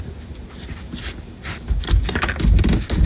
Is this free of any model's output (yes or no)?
yes